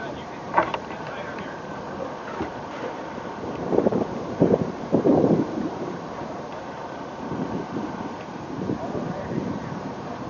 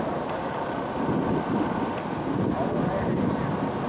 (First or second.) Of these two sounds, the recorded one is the second